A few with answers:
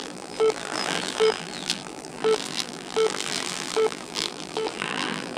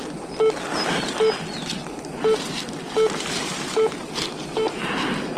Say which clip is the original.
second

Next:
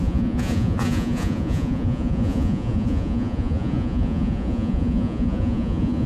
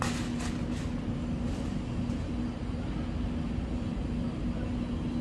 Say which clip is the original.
second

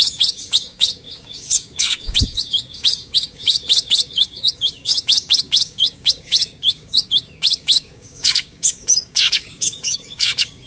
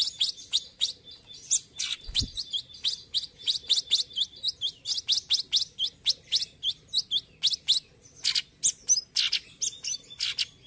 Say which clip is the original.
second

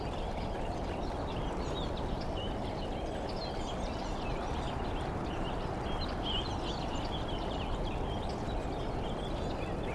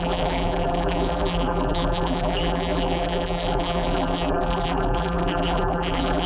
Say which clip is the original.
first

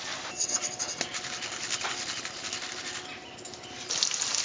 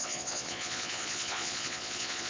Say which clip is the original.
first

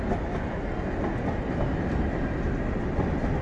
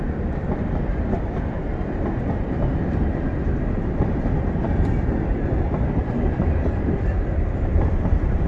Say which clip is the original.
first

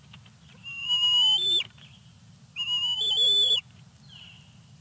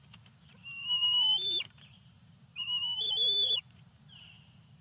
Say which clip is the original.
first